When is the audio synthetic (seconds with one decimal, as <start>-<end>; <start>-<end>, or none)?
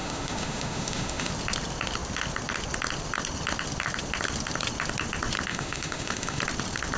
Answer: 0.0-1.3; 5.5-6.4